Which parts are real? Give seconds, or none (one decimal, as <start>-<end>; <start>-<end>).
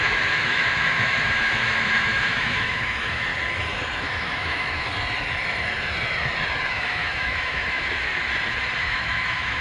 3.3-4.0; 4.9-6.7; 8.1-8.8